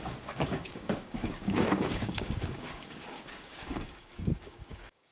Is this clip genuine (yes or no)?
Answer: no